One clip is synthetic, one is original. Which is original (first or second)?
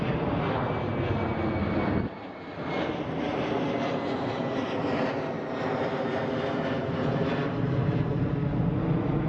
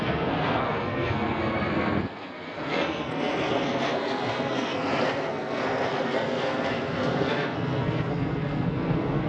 first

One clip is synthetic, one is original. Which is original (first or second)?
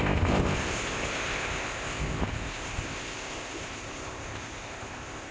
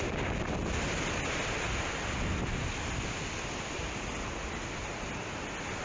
second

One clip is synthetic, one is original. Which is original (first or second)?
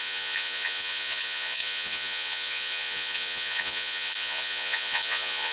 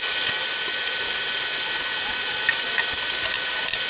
second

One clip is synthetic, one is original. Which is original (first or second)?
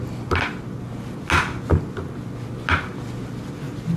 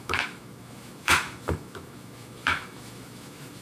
first